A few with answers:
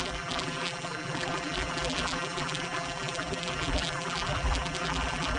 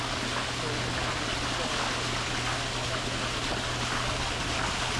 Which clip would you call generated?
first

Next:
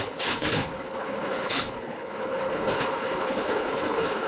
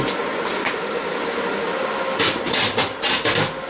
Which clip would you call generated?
first